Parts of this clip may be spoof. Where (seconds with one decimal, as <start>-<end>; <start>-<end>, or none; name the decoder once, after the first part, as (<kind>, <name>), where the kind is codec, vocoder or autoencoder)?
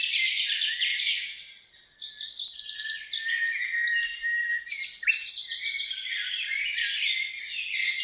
none